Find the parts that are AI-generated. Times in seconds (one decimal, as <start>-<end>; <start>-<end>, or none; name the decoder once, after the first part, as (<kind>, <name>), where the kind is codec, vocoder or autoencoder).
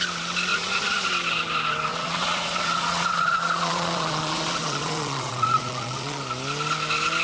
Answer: 0.5-1.1 (vocoder, Vocos); 1.9-6.2